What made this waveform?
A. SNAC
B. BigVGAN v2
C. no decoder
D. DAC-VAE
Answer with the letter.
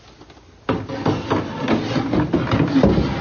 C